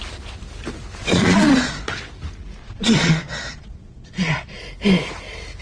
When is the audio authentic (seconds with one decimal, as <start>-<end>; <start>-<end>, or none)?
0.0-1.0; 2.0-2.6; 4.6-5.6